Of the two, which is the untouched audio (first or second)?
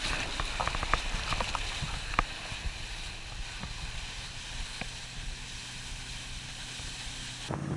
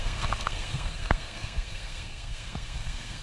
first